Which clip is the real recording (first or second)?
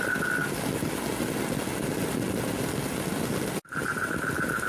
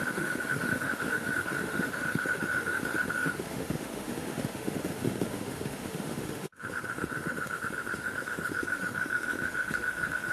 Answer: first